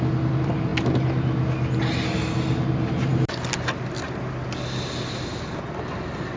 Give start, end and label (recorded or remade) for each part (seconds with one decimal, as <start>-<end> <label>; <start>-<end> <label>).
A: 0.0-6.4 recorded